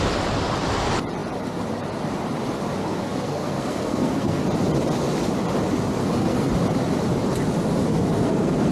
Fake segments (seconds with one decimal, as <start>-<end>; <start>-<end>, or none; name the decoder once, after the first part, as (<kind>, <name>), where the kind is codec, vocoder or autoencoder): 2.8-4.4 (codec, SNAC); 6.0-6.5; 7.9-8.7